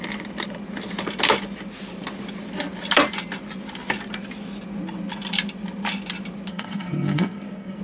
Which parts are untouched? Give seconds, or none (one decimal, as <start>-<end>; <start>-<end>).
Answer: 0.0-6.5